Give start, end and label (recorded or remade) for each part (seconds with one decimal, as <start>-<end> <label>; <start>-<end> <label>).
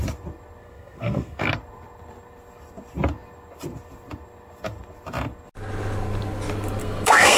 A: 0.0-0.6 recorded; 0.6-1.5 remade; 1.5-6.8 recorded; 6.8-7.4 remade